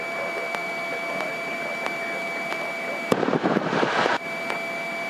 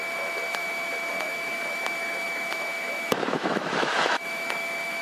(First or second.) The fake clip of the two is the second